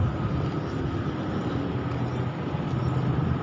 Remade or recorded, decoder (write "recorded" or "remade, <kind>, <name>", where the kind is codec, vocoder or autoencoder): recorded